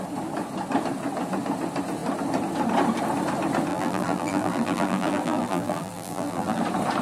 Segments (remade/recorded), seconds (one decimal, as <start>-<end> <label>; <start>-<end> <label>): 0.0-3.7 recorded; 3.7-6.6 remade; 6.6-7.0 recorded